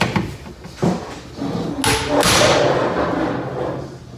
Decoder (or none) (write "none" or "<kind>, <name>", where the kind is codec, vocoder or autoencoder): none